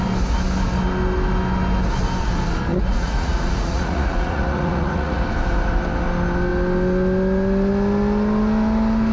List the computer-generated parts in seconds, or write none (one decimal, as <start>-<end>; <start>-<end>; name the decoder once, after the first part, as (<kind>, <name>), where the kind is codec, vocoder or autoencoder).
2.7-5.2 (vocoder, Vocos)

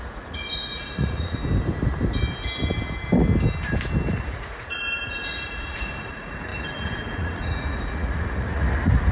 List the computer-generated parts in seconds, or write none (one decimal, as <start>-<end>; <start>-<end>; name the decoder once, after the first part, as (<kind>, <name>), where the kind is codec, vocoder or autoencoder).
0.0-1.4 (vocoder, Vocos); 4.1-9.1